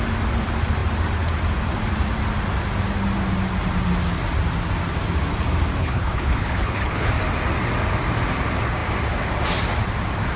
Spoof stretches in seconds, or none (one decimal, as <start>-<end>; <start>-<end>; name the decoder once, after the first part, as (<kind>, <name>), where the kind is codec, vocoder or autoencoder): 5.8-7.1 (codec, HILCodec)